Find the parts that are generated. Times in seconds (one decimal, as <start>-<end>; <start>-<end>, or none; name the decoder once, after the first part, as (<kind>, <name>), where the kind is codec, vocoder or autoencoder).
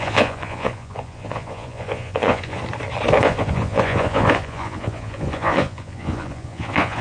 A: 0.0-2.6 (vocoder, Vocos); 3.2-7.0